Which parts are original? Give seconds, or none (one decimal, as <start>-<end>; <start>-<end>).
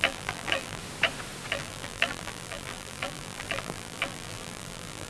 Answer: 0.8-1.5